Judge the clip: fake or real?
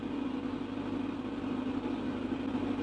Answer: real